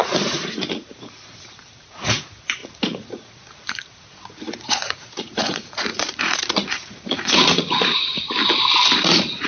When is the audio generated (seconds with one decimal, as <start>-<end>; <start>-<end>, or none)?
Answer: 0.0-8.1; 9.0-9.5